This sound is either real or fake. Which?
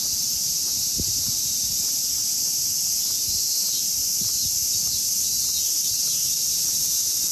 real